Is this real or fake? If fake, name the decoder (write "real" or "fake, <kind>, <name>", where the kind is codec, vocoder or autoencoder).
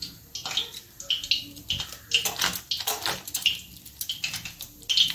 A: real